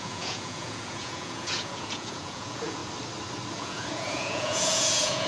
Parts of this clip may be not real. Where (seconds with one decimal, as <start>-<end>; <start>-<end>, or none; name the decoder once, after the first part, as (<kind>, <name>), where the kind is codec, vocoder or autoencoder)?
0.0-2.8 (vocoder, Vocos); 3.5-5.3